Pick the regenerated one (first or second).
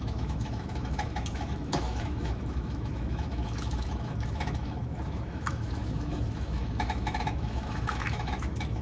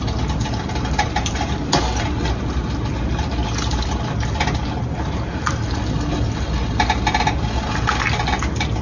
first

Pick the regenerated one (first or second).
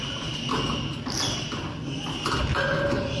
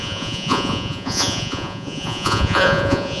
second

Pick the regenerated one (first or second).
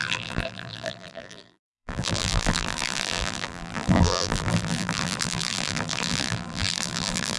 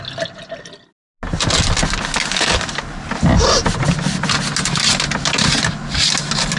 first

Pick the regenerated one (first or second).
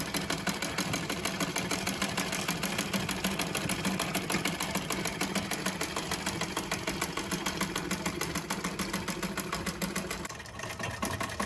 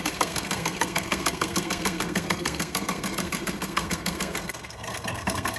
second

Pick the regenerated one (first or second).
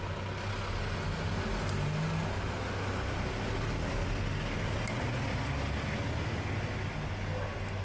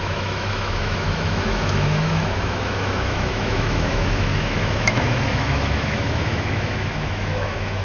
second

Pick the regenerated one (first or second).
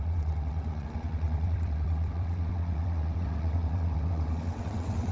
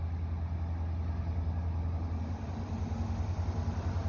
first